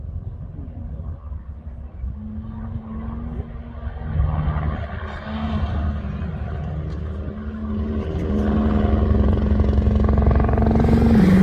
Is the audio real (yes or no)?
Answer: yes